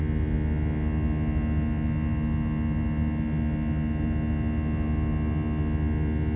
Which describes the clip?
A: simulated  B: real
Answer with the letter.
B